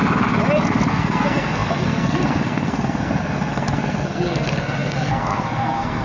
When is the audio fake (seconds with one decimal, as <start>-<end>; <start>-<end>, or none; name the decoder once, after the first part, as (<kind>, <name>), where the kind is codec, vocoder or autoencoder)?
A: 0.9-6.0 (codec, SNAC)